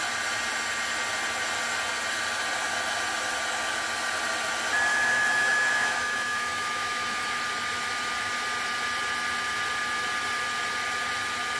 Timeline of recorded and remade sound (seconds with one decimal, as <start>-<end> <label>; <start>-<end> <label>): 0.0-4.9 recorded; 4.9-7.4 remade; 7.4-11.6 recorded

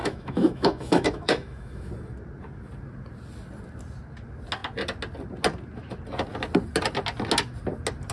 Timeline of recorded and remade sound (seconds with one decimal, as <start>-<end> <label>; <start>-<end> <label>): 0.0-1.9 remade; 1.9-8.1 recorded

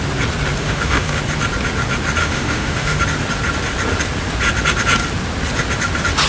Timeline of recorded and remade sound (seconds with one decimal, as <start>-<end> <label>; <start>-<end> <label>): 0.0-0.6 recorded; 0.6-1.2 remade; 1.2-2.2 recorded; 2.2-3.0 remade; 3.0-6.3 recorded

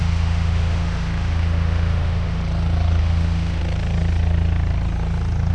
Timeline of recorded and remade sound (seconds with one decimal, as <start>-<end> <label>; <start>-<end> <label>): 0.0-2.4 remade; 2.4-3.0 recorded; 3.0-3.6 remade; 3.6-5.5 recorded

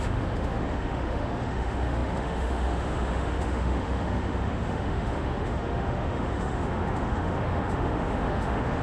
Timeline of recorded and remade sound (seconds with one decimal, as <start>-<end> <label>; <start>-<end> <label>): 0.0-8.8 remade